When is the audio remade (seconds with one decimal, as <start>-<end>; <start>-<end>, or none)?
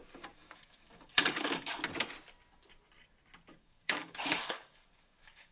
0.4-1.8; 3.5-5.5